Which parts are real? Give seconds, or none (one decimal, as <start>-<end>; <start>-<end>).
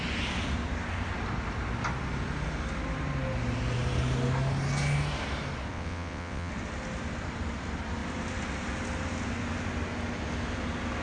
0.0-5.7; 6.5-11.0